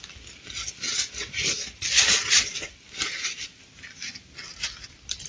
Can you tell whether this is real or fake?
real